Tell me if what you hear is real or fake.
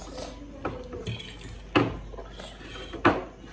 real